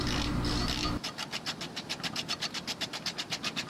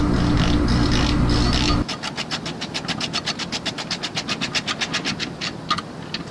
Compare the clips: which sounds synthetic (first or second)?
first